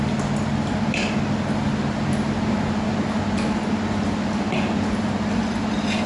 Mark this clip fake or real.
real